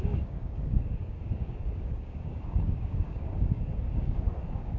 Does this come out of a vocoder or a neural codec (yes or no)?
yes